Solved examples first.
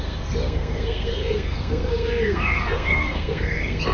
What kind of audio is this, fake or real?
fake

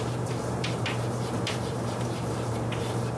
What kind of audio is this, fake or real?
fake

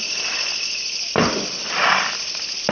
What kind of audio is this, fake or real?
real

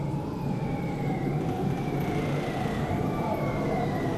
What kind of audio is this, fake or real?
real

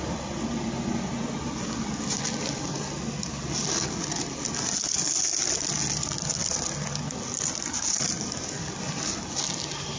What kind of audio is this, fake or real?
real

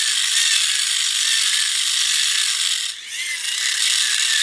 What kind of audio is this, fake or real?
real